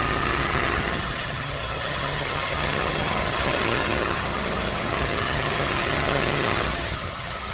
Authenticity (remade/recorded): remade